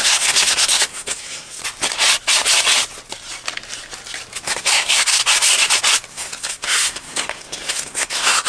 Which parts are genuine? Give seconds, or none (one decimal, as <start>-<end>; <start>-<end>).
1.6-4.4; 5.2-6.1